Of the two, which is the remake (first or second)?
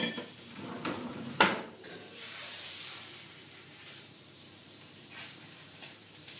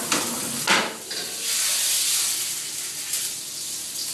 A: first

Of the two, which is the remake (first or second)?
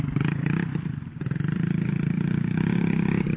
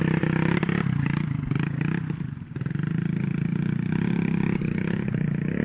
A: first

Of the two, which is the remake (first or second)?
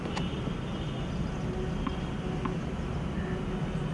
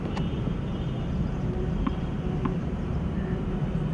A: second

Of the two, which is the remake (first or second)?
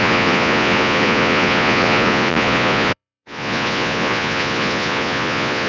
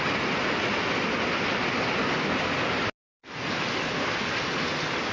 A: first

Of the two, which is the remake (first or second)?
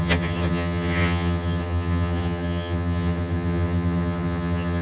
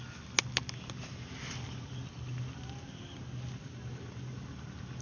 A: first